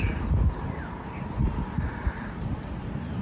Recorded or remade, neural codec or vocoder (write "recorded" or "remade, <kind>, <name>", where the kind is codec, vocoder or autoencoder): recorded